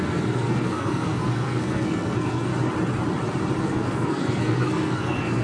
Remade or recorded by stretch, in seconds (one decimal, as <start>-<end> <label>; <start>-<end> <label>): 0.0-2.5 remade; 2.5-3.6 recorded; 3.6-5.4 remade